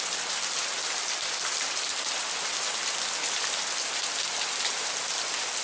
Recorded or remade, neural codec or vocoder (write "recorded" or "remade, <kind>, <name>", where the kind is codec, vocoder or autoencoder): recorded